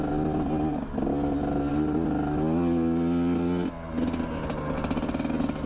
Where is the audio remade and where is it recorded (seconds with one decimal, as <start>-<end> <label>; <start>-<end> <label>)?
0.0-5.7 recorded